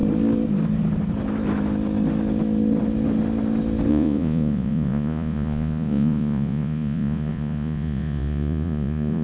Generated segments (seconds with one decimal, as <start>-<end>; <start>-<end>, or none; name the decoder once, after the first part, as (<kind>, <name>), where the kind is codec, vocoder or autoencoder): 3.9-9.2 (vocoder, Vocos)